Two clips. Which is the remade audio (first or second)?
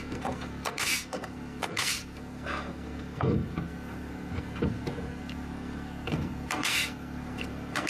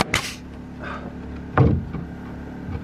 first